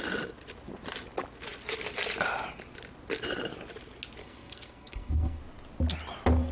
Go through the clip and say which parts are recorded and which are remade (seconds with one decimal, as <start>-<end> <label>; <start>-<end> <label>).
0.0-4.2 recorded; 4.2-5.4 remade; 5.4-6.5 recorded